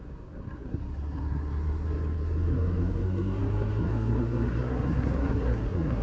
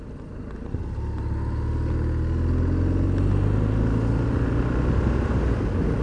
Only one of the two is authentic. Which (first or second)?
second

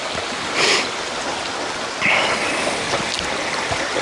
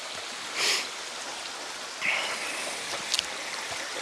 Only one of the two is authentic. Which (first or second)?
second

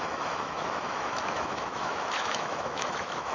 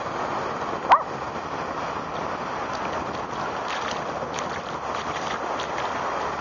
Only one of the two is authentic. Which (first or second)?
second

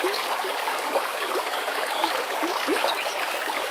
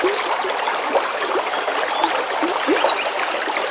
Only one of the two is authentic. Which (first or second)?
second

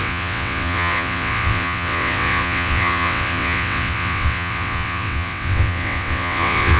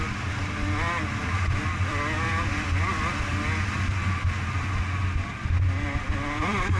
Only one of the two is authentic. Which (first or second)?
second